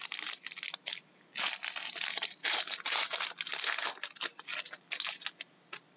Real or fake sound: real